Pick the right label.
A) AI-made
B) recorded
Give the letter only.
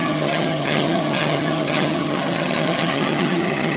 A